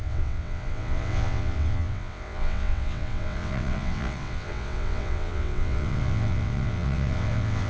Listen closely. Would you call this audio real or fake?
fake